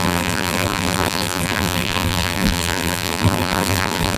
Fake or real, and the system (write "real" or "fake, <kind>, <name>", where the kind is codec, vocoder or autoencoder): fake, vocoder, BigVGAN v2